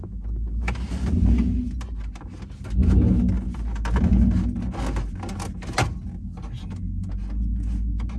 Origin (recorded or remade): recorded